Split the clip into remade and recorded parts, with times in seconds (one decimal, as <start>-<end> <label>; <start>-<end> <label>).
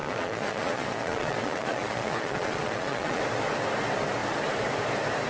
0.0-3.2 remade; 3.2-5.3 recorded